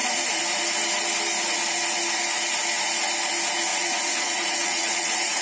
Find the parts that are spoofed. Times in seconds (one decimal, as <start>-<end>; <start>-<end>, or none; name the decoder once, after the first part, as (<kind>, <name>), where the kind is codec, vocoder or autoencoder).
3.7-5.4 (vocoder, Vocos)